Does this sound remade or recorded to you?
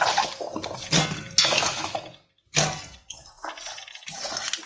recorded